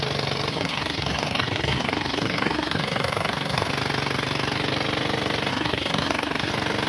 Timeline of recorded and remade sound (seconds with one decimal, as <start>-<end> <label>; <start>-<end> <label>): 0.0-0.5 recorded; 0.5-3.7 remade; 3.7-5.5 recorded; 5.5-6.5 remade; 6.5-6.9 recorded

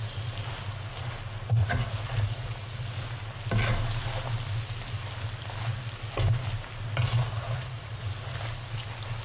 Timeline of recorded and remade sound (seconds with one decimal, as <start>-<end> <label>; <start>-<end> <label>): 0.0-1.6 recorded; 1.6-2.8 remade; 2.8-7.2 recorded; 7.2-8.0 remade; 8.0-9.2 recorded